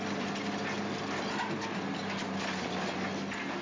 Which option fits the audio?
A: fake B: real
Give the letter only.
B